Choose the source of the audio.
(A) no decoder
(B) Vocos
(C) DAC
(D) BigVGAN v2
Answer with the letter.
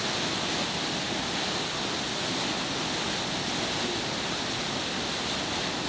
A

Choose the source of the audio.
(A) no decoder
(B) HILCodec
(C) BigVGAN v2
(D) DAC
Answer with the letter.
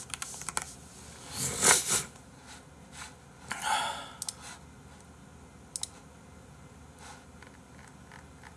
A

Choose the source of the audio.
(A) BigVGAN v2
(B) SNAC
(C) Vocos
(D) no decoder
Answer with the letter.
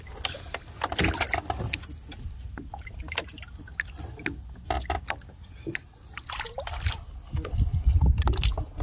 D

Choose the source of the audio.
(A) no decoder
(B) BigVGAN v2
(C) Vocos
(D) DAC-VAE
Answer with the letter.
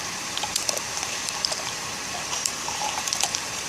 B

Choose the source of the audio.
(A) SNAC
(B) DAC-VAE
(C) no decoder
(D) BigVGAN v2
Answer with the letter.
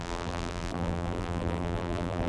D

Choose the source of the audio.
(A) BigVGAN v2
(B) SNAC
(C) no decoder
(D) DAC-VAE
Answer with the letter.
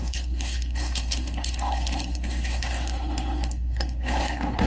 B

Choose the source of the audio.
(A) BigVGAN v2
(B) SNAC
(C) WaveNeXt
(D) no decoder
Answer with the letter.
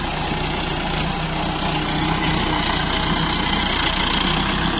D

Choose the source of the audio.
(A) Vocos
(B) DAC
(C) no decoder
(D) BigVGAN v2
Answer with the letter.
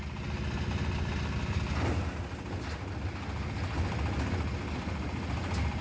C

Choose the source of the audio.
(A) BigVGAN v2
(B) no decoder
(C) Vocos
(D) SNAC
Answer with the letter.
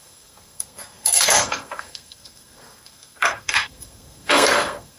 D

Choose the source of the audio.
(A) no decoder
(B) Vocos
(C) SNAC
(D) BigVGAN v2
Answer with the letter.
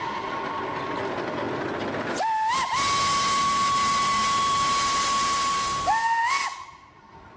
A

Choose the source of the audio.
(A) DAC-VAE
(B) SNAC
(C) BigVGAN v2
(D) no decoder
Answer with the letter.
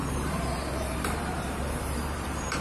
C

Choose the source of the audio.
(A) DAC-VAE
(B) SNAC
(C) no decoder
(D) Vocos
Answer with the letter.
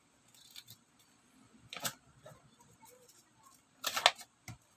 C